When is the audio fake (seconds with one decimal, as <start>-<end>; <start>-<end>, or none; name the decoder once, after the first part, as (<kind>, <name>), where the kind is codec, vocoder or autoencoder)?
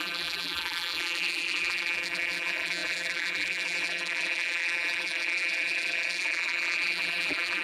0.0-7.6 (vocoder, BigVGAN v2)